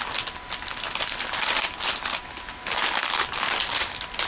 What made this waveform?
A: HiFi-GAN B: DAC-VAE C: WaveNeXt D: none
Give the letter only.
D